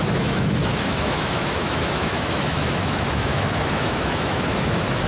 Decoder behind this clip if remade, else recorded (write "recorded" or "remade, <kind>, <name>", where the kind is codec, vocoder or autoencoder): remade, autoencoder, DAC-VAE